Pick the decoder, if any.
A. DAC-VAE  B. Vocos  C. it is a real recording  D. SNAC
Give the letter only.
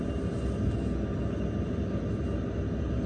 C